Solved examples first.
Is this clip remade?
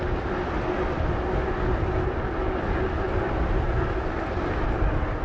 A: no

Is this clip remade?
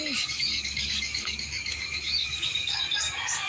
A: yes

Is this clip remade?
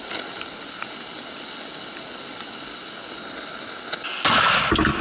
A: no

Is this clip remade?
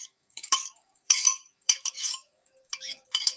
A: yes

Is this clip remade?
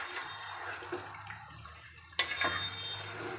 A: no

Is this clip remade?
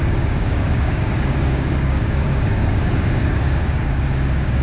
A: yes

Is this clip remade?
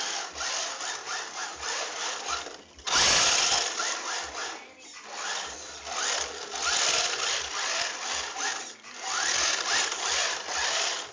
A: no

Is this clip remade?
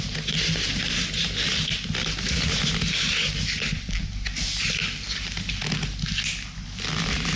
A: no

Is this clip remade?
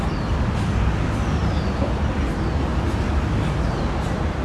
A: no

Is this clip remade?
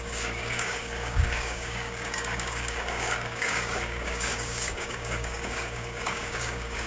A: yes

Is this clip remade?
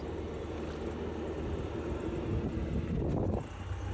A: no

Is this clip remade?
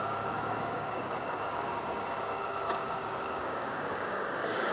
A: yes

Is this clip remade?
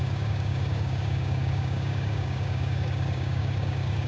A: yes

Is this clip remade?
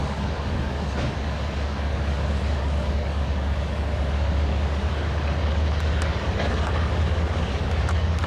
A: yes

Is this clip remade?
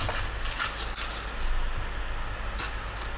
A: no